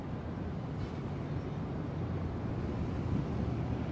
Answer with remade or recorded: recorded